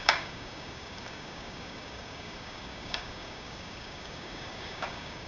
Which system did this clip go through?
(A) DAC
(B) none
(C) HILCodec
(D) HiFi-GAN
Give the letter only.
A